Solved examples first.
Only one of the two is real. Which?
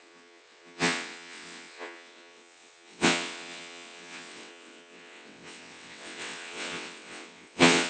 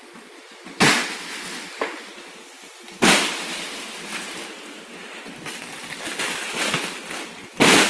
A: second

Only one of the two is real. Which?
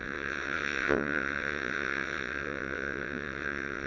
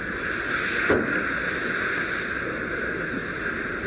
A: second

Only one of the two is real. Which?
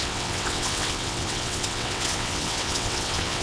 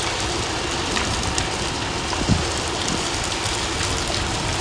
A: second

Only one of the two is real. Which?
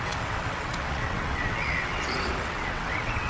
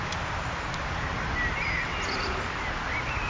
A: second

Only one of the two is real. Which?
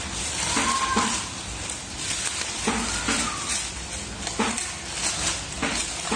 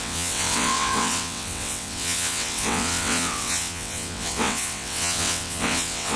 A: first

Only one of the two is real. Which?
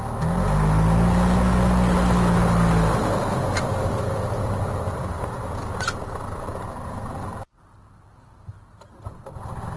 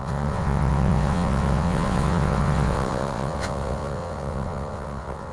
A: first